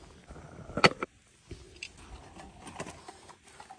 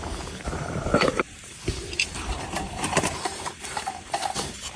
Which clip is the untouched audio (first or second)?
first